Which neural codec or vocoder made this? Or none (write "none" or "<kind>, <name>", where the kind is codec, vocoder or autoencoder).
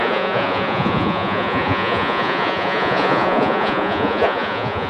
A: vocoder, Vocos